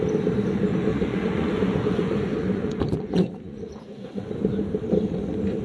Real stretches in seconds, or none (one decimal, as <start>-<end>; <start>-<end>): 0.0-0.9; 4.3-5.6